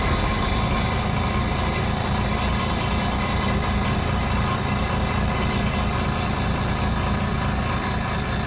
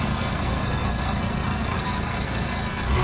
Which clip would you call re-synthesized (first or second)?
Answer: second